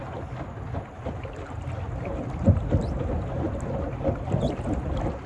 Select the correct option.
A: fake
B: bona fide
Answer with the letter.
B